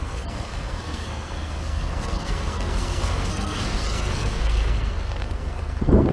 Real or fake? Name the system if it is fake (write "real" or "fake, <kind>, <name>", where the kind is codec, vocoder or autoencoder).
fake, codec, SNAC